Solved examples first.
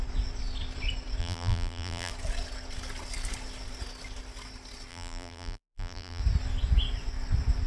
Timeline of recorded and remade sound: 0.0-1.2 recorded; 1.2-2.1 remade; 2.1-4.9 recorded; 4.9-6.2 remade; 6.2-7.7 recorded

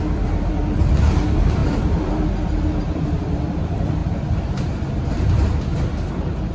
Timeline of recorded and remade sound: 0.0-4.0 remade; 4.0-6.1 recorded; 6.1-6.5 remade

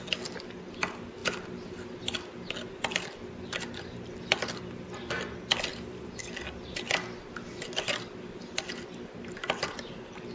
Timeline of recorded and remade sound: 0.0-5.7 recorded; 5.7-6.2 remade; 6.2-10.3 recorded

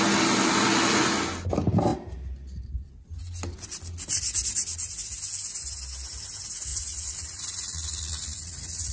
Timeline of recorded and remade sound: 0.0-6.7 recorded; 6.7-8.9 remade

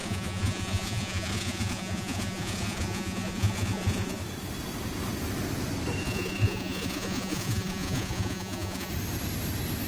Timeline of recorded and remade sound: 0.0-4.2 remade; 4.2-6.0 recorded; 6.0-8.9 remade; 8.9-9.9 recorded

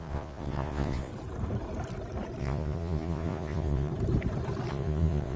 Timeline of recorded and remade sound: 0.0-1.1 remade; 1.1-2.4 recorded; 2.4-3.9 remade; 3.9-4.7 recorded; 4.7-5.4 remade